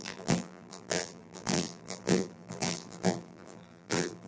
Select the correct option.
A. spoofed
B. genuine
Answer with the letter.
A